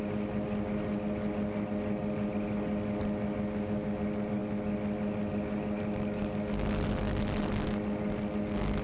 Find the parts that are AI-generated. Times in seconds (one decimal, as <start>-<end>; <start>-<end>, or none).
none